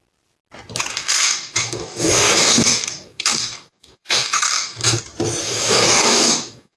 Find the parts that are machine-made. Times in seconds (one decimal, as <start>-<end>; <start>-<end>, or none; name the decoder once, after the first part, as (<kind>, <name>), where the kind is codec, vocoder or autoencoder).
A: 0.9-5.0 (codec, DAC); 5.4-6.8